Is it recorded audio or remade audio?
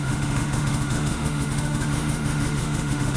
remade